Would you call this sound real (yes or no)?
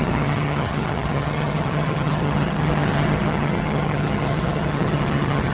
no